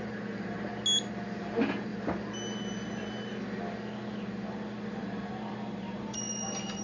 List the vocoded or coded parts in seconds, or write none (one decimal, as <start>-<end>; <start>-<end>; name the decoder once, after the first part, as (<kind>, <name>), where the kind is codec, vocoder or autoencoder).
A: 0.0-0.7 (vocoder, BigVGAN v2); 1.4-1.9; 2.5-3.3; 4.9-6.8